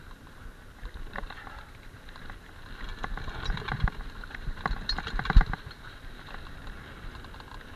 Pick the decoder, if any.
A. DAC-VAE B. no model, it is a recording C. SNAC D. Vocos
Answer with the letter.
B